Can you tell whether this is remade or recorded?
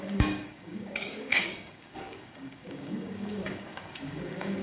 remade